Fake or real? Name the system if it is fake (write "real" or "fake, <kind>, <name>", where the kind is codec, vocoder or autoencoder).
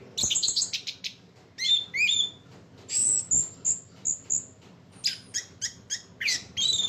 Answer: real